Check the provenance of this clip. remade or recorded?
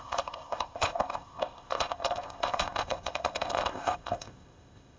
remade